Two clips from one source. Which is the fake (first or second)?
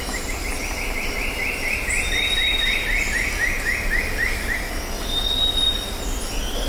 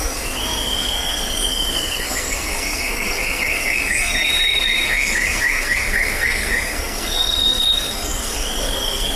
second